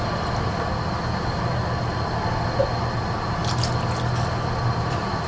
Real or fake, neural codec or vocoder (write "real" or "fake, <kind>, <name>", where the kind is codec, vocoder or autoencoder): real